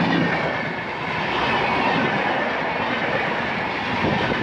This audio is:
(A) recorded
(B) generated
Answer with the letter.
A